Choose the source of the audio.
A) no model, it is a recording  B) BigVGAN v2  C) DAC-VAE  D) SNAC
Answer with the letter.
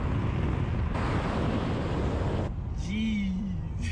A